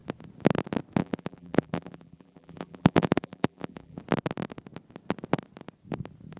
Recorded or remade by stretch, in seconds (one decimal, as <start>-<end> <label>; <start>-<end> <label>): 0.0-1.0 recorded; 1.0-4.0 remade; 4.0-6.4 recorded